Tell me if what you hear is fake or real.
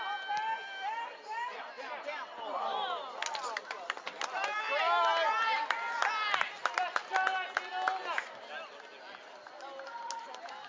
real